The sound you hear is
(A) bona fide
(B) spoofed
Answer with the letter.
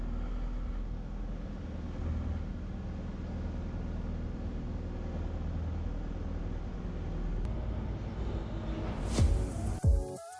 A